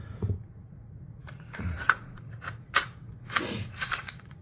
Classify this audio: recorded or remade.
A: remade